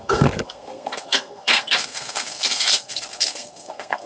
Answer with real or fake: fake